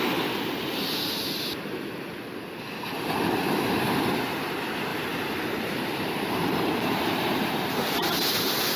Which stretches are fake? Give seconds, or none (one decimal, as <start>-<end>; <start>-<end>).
4.9-8.1